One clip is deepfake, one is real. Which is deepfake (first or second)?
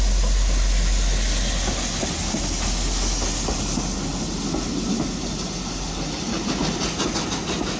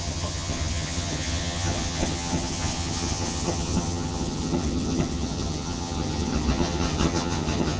second